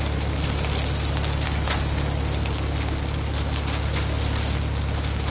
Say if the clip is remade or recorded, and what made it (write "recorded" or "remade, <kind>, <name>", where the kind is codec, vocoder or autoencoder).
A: recorded